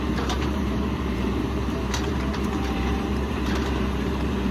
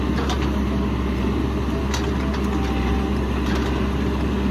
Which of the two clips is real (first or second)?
second